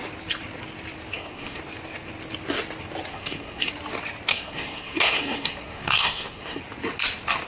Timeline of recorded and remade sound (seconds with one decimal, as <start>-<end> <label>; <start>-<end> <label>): 0.0-1.1 recorded; 1.1-1.6 remade; 1.6-3.1 recorded; 3.1-3.7 remade; 3.7-4.3 recorded; 4.3-6.6 remade; 6.6-7.5 recorded